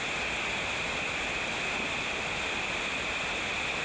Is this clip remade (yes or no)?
no